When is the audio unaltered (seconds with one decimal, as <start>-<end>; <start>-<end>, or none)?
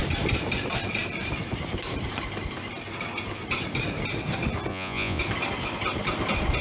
0.0-4.7; 5.2-6.6